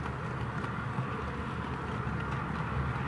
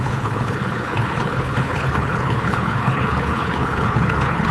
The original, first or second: first